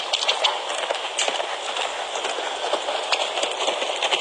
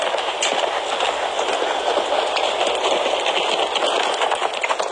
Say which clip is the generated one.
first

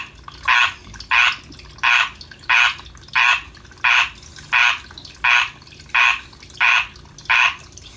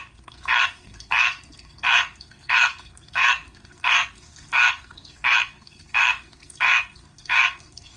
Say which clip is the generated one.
second